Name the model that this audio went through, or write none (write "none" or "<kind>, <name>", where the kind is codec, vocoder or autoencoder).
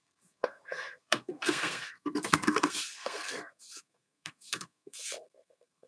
codec, SNAC